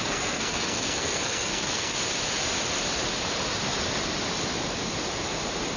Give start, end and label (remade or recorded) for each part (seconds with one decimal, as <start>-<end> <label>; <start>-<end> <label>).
0.0-2.1 remade; 2.1-5.8 recorded

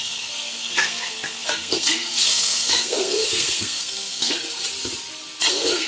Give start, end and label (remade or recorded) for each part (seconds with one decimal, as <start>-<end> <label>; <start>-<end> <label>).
0.0-4.4 remade; 4.4-5.5 recorded; 5.5-5.9 remade

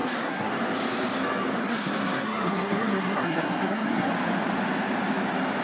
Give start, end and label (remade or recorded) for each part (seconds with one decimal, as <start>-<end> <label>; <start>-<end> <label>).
0.0-0.5 remade; 0.5-1.6 recorded; 1.6-4.1 remade; 4.1-5.6 recorded

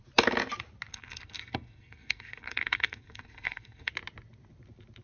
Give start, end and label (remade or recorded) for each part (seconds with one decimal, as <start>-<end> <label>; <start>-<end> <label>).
0.0-0.9 recorded; 0.9-3.9 remade; 3.9-5.0 recorded

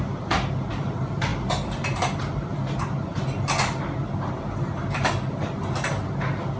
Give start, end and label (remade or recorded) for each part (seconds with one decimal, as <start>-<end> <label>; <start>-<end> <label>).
0.0-6.6 recorded